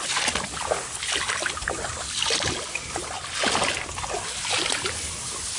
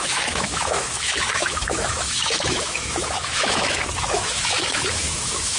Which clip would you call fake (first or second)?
second